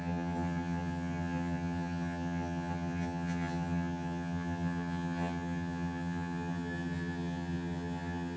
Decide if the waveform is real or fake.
fake